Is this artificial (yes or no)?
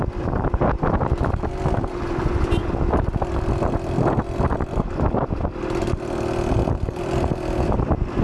no